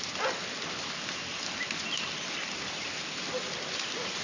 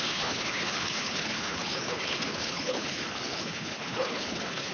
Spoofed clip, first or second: second